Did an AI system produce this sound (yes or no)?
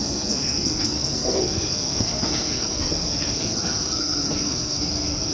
yes